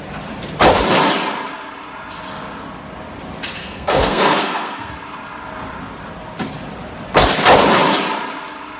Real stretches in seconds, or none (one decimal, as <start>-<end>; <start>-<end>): 0.0-3.6; 4.9-8.8